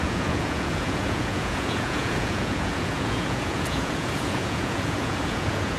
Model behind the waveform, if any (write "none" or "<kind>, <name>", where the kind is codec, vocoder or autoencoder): vocoder, Vocos